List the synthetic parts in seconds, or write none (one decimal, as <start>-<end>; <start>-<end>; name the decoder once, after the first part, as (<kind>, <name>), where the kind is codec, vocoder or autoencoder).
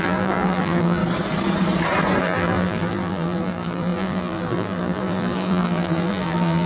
0.0-1.0 (vocoder, BigVGAN v2); 2.2-6.7